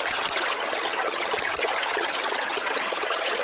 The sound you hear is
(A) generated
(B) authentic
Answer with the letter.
A